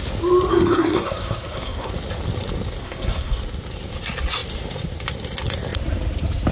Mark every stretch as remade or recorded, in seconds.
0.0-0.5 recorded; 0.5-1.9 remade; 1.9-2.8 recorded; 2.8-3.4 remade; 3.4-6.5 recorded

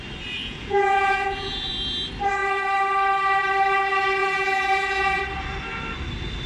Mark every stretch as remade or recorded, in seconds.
0.0-0.4 recorded; 0.4-1.7 remade; 1.7-4.2 recorded; 4.2-5.2 remade; 5.2-6.5 recorded

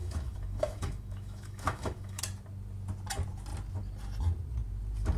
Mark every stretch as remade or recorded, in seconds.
0.0-2.2 remade; 2.2-5.2 recorded

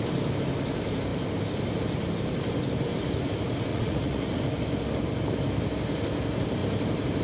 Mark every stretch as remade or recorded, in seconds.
0.0-3.7 recorded; 3.7-4.4 remade; 4.4-7.2 recorded

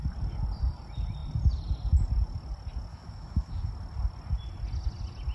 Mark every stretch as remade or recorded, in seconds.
0.0-2.9 recorded; 2.9-3.7 remade; 3.7-5.3 recorded

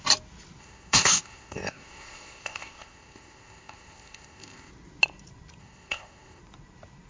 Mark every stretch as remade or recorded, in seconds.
0.0-0.6 recorded; 0.6-4.7 remade; 4.7-5.6 recorded; 5.6-6.4 remade; 6.4-7.1 recorded

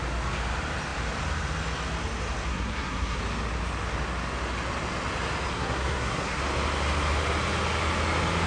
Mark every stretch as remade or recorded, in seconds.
0.0-2.5 recorded; 2.5-3.2 remade; 3.2-5.5 recorded; 5.5-6.4 remade; 6.4-8.5 recorded